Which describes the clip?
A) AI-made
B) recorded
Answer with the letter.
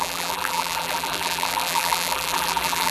A